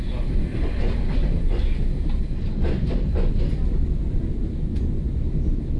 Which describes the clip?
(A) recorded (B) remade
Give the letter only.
A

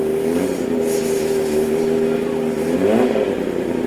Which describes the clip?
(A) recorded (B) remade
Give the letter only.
A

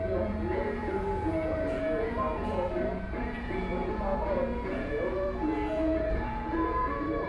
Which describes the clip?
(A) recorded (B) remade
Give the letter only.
B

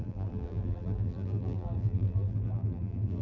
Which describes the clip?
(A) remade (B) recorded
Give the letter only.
A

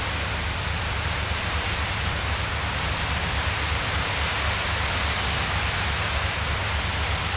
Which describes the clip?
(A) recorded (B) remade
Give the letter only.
A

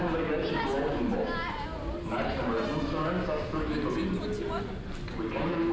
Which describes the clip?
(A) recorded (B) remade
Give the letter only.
A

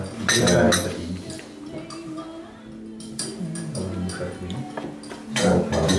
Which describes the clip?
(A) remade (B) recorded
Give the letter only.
B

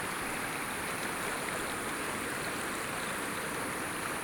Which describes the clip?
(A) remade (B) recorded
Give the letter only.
B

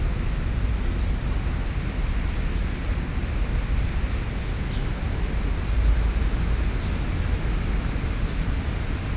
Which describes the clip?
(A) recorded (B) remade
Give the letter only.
A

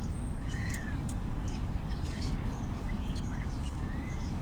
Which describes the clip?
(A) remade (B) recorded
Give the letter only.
A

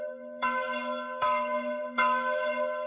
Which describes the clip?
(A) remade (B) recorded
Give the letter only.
A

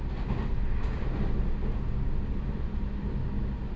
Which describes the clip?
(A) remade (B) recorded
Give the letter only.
B